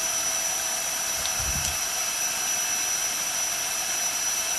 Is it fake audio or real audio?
real